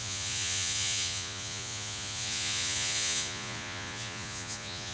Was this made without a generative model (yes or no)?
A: no